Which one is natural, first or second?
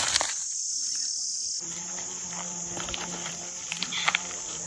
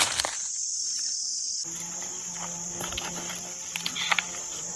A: second